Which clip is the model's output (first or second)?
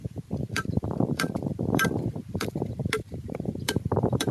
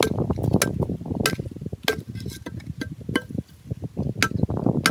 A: first